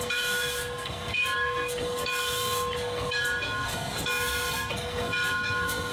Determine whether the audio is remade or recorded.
remade